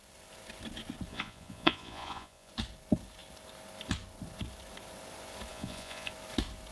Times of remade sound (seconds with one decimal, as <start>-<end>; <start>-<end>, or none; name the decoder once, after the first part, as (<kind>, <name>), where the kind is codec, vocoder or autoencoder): 1.1-2.5 (vocoder, Vocos); 5.5-6.1